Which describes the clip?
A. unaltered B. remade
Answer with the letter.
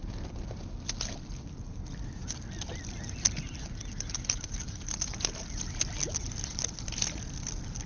A